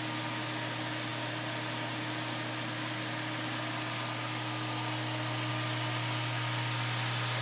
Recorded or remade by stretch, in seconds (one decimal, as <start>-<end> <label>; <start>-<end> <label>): 0.0-7.4 recorded